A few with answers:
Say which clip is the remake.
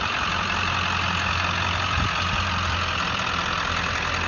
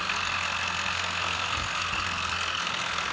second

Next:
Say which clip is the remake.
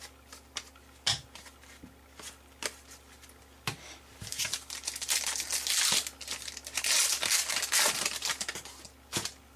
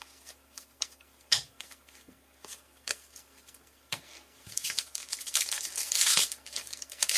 second